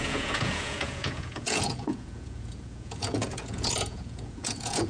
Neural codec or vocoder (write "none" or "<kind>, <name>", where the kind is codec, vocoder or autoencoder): vocoder, Vocos